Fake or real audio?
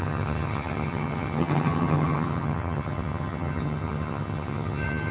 fake